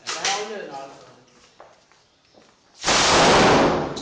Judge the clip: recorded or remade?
recorded